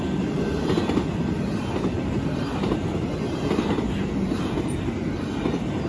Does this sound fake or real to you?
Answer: real